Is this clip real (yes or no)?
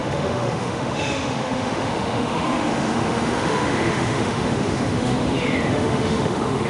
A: no